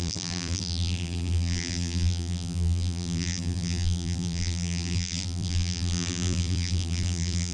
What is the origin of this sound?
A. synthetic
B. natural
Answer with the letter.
A